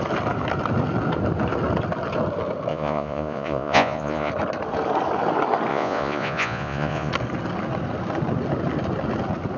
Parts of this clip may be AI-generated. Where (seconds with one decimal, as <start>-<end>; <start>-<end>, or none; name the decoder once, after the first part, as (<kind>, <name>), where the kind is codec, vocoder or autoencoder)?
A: 2.7-4.3 (vocoder, Vocos); 5.7-7.1